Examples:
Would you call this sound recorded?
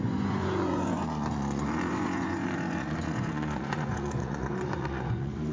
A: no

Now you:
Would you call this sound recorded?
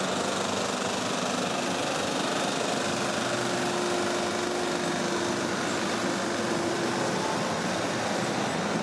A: yes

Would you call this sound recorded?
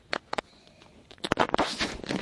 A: no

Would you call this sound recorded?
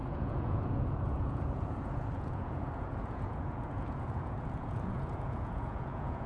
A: no